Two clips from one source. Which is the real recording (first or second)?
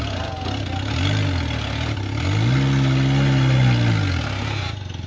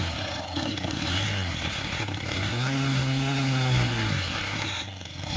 first